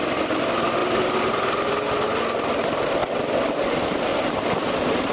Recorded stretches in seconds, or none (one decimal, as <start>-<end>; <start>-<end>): 0.0-4.1